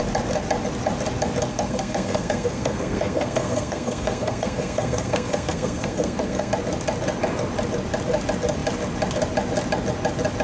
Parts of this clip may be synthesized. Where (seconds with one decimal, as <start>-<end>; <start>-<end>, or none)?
1.5-6.5